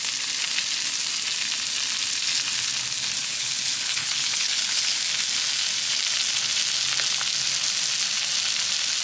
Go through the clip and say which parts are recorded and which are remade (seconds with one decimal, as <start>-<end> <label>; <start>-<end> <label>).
0.0-3.2 recorded; 3.2-5.0 remade; 5.0-9.0 recorded